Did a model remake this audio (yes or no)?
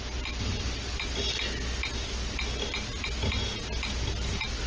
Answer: no